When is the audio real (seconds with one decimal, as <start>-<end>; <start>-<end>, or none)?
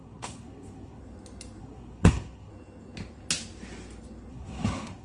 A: 1.0-1.6; 2.5-4.3